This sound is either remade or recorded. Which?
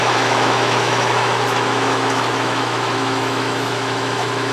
remade